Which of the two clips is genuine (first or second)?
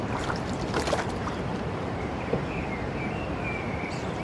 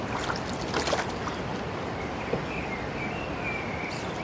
second